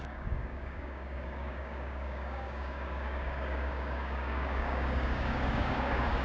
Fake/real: fake